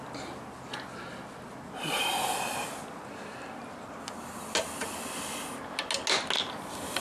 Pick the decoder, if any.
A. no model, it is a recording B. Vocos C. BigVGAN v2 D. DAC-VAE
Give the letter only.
A